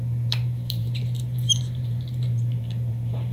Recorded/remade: remade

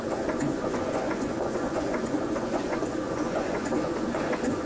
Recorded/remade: remade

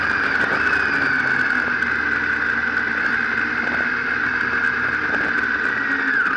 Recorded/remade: recorded